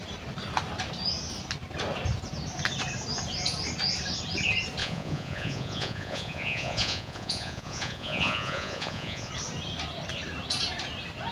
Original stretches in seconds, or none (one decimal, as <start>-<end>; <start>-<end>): 0.0-4.8; 9.3-11.3